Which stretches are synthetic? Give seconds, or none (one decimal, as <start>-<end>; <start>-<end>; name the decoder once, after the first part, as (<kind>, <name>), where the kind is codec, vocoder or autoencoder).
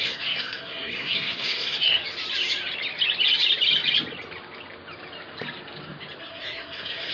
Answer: 0.0-2.0 (codec, SNAC); 6.2-7.1